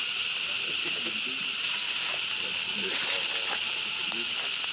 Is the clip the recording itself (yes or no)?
yes